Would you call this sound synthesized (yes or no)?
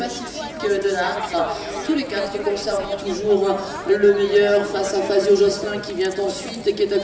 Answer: no